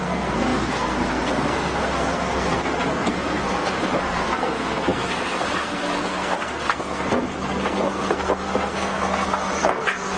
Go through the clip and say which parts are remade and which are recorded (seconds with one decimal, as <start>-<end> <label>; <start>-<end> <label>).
0.0-10.2 remade